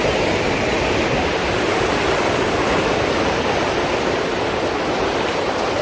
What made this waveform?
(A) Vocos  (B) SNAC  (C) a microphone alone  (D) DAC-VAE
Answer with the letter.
C